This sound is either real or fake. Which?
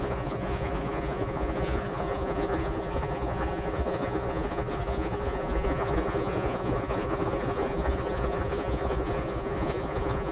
fake